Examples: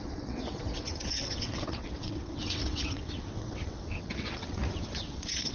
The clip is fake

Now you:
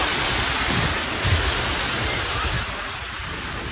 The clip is real